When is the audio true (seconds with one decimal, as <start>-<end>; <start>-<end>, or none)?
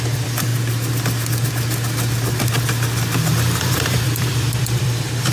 0.5-3.3